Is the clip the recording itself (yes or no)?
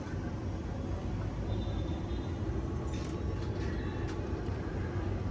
yes